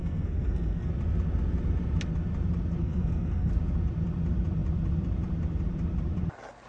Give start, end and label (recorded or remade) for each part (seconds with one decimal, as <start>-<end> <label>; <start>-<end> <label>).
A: 0.0-0.9 remade; 0.9-2.8 recorded; 2.8-3.5 remade; 3.5-6.7 recorded